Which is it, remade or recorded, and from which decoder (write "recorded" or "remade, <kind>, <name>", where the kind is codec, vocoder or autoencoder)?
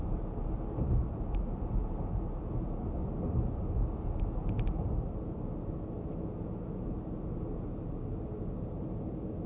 recorded